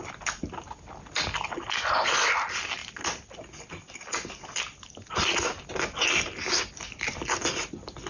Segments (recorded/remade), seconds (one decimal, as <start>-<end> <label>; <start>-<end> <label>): 0.0-8.1 recorded